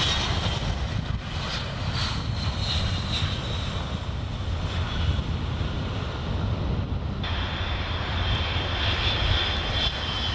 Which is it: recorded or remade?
recorded